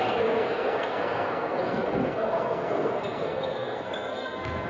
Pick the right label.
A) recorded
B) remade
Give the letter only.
B